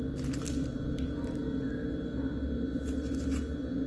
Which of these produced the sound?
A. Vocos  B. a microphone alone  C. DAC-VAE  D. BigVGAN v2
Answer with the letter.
B